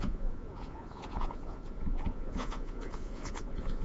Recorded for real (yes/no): no